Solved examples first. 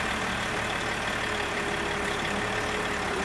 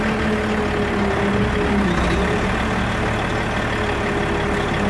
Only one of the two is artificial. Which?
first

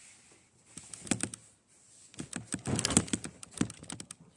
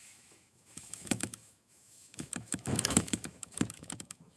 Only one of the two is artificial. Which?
second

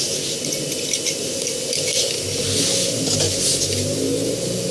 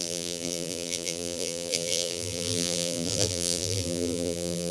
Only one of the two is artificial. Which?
second